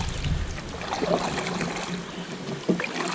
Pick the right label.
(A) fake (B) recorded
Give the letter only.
B